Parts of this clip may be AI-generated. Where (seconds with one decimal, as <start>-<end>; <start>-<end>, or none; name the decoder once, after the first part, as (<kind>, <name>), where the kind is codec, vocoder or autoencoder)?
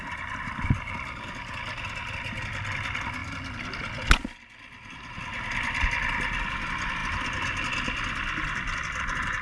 none